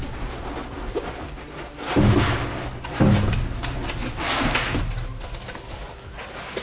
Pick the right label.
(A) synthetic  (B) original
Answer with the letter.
B